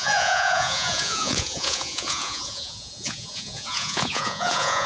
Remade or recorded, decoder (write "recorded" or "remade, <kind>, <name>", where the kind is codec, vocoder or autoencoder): remade, vocoder, Vocos